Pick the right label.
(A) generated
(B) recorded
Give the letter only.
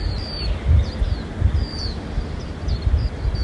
B